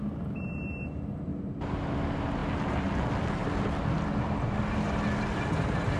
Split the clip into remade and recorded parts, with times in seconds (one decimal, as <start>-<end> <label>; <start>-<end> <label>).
0.0-6.0 recorded

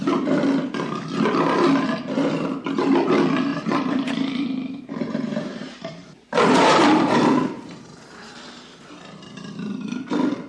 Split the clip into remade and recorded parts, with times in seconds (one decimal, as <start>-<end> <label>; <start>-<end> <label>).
0.0-3.5 recorded; 3.5-8.3 remade; 8.3-10.5 recorded

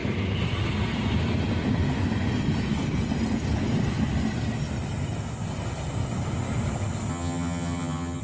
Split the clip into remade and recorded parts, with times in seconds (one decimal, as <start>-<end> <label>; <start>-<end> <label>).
0.0-7.1 recorded; 7.1-8.2 remade

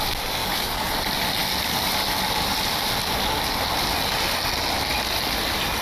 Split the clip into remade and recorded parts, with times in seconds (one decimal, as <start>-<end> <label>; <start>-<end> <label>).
0.0-0.4 recorded; 0.4-0.9 remade; 0.9-5.8 recorded